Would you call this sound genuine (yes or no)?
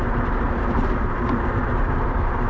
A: no